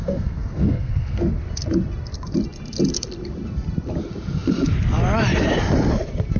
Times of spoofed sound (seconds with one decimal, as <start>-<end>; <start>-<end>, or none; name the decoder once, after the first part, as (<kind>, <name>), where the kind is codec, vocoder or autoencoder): 0.0-1.3 (codec, SNAC)